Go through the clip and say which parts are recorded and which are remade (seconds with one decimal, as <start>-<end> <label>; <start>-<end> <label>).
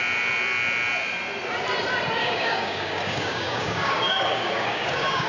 0.0-2.2 recorded; 2.2-5.3 remade